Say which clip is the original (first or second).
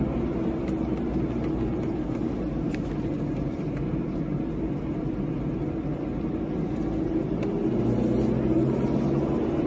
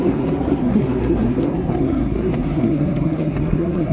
first